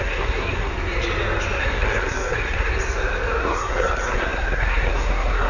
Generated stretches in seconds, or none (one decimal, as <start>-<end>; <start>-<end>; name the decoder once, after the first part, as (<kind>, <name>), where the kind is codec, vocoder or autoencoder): 0.0-0.7 (codec, SNAC); 1.6-2.7; 3.4-5.5